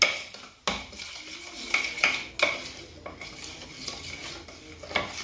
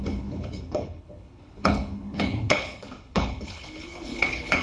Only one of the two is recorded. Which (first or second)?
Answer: first